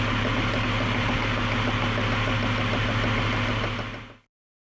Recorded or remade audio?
recorded